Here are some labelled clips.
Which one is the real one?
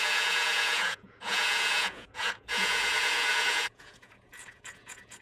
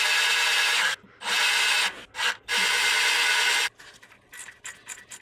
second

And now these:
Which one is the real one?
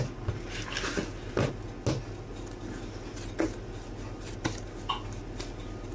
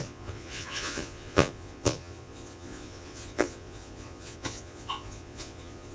first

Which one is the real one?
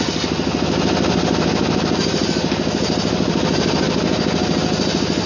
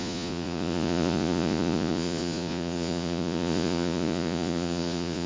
first